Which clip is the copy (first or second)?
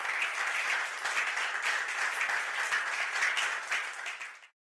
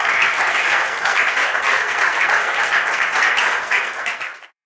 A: second